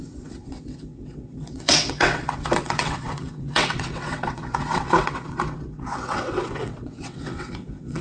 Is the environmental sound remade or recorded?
remade